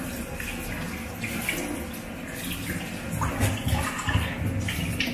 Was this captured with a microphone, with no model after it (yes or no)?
yes